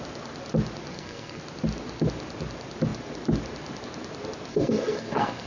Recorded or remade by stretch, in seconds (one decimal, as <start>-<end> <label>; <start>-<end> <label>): 0.0-0.9 recorded; 0.9-1.4 remade; 1.4-4.5 recorded; 4.5-5.5 remade